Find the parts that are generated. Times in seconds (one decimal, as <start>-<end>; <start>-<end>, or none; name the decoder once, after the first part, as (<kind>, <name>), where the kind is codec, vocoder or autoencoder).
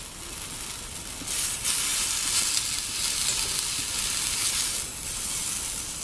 none